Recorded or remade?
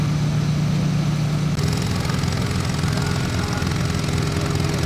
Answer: recorded